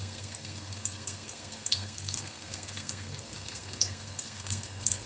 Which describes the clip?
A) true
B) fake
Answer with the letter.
B